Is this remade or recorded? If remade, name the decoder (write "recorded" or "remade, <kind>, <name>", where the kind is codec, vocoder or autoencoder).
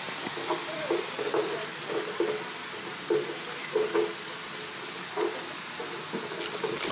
recorded